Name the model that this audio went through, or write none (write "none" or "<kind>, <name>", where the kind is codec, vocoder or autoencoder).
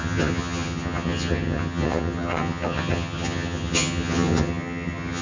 vocoder, HiFi-GAN